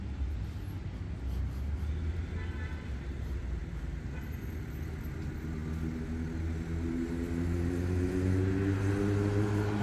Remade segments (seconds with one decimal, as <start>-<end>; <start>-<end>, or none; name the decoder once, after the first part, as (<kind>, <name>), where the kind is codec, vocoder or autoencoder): 3.6-4.8 (vocoder, BigVGAN v2)

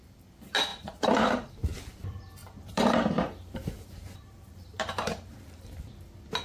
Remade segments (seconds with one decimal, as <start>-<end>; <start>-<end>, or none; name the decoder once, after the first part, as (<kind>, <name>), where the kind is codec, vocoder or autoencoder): 0.7-1.5 (vocoder, BigVGAN v2); 2.4-5.7

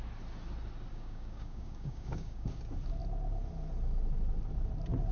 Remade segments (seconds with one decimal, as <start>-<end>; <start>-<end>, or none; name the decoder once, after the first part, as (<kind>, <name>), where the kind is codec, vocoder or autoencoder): 0.9-2.6 (codec, DAC)

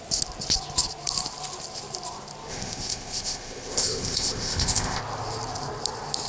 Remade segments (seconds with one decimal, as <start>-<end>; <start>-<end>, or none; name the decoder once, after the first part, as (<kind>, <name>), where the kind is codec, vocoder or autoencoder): 2.5-5.0 (codec, ZipCodec)

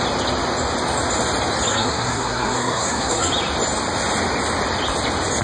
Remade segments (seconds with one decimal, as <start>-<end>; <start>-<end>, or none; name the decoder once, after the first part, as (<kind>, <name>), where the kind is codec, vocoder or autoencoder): 1.7-3.3 (codec, SNAC)

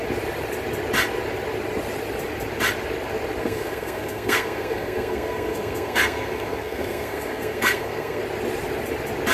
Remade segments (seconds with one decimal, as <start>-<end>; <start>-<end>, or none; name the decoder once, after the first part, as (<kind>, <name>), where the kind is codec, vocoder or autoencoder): 3.4-8.2 (codec, SNAC)

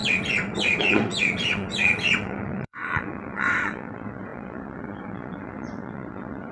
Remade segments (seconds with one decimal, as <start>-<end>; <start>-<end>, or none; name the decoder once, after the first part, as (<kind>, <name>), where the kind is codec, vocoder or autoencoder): 0.0-6.5 (vocoder, WaveNeXt)